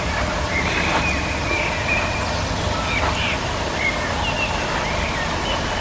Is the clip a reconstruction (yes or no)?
no